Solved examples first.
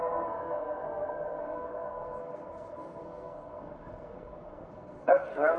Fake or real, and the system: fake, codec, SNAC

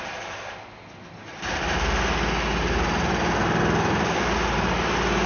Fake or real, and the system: real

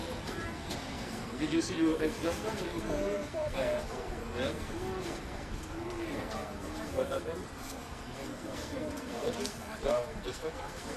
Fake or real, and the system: fake, codec, SNAC